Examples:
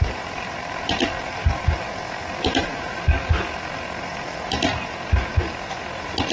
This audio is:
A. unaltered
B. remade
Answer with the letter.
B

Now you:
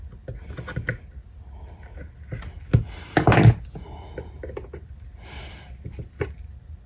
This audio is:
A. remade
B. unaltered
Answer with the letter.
B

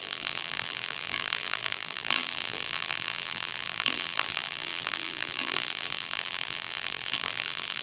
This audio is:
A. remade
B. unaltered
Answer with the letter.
A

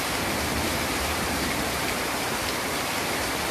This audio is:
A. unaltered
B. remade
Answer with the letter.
A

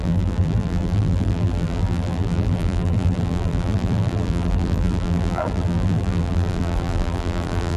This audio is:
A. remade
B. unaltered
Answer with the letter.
A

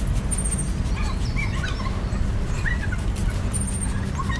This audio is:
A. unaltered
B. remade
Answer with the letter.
A